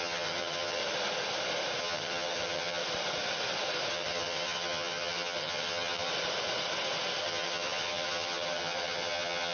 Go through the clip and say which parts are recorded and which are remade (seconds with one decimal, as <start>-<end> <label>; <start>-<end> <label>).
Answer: 0.0-0.8 remade; 0.8-1.8 recorded; 1.8-2.8 remade; 2.8-3.9 recorded; 3.9-6.1 remade; 6.1-7.2 recorded; 7.2-9.5 remade